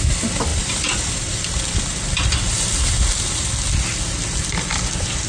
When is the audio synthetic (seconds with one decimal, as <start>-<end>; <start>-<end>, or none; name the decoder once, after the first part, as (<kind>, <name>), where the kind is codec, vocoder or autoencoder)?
0.5-1.4 (vocoder, BigVGAN v2)